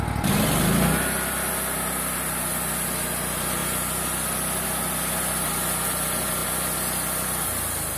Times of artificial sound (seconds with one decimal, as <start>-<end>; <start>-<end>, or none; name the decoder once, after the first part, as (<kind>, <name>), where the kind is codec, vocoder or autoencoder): none